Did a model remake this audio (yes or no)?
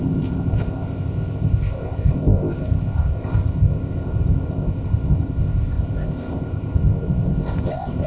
yes